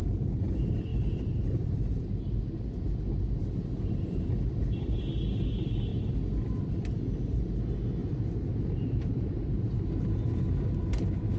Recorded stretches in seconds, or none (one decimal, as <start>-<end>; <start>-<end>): 0.0-0.9; 2.4-8.0; 9.4-11.4